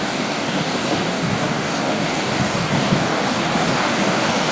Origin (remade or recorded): remade